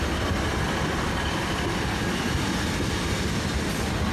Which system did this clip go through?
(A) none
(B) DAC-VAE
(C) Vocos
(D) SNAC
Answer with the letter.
A